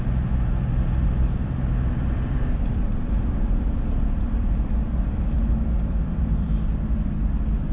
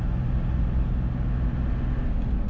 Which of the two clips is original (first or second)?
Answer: second